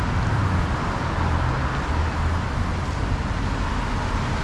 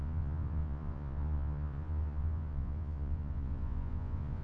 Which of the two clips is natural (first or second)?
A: first